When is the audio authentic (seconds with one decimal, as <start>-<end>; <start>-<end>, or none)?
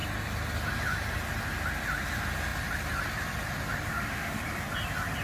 0.0-3.9; 4.4-5.2